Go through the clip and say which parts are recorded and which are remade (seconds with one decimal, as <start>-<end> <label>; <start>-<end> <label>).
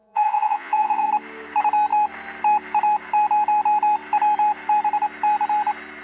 0.0-1.1 remade; 1.1-6.0 recorded